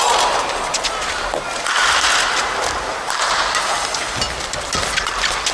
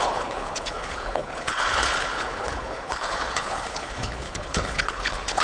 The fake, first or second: second